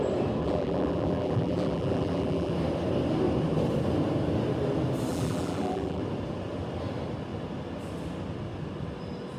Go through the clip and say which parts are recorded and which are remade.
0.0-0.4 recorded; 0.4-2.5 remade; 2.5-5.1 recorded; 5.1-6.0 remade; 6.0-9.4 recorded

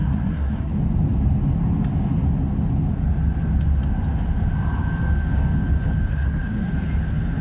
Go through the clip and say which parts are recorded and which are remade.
0.0-0.7 remade; 0.7-6.1 recorded; 6.1-6.7 remade; 6.7-7.4 recorded